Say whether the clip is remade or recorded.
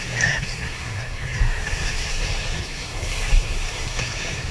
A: remade